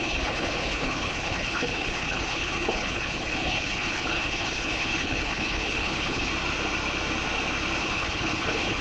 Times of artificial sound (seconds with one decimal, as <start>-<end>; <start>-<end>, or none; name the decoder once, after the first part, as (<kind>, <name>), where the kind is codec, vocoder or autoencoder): 0.0-6.3 (codec, HILCodec); 7.8-8.8